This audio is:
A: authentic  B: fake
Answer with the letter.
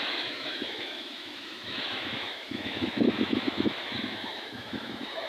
B